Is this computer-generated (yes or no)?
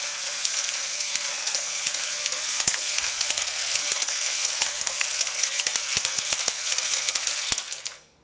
yes